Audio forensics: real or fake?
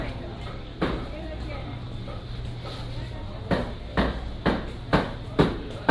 real